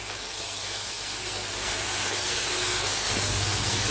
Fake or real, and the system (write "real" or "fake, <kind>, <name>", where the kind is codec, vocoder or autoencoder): fake, codec, SNAC